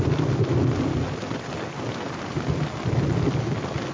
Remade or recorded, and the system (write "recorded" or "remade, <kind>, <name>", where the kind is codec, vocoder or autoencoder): recorded